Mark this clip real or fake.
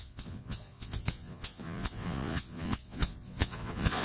fake